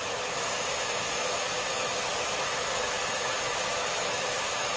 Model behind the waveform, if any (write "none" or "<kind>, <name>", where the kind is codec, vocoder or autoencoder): autoencoder, DAC-VAE